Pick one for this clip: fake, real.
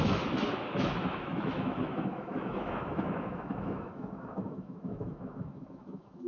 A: fake